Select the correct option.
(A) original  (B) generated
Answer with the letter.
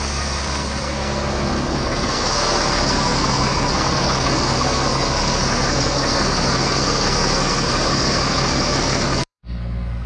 B